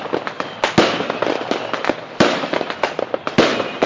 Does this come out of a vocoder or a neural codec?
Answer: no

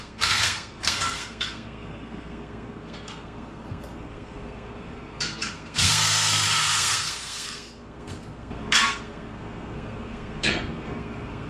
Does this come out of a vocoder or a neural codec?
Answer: yes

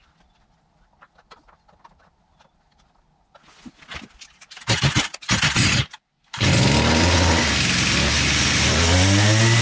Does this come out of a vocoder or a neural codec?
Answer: no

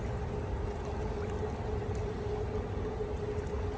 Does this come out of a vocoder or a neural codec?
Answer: no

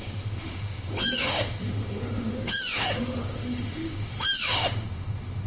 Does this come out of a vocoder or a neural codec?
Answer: yes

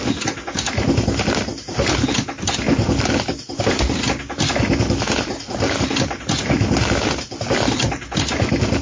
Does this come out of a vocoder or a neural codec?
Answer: no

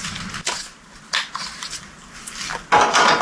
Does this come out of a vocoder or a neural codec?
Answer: no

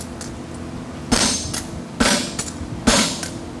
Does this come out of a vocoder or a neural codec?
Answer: no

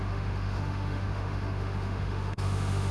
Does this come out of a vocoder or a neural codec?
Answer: yes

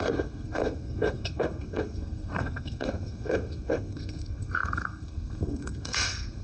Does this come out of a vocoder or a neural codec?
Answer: yes